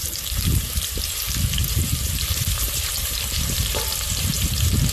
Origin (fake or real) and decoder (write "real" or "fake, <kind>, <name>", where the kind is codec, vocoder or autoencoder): fake, vocoder, BigVGAN v2